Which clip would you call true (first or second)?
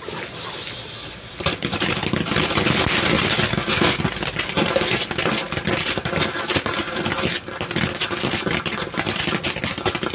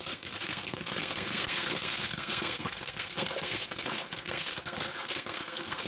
first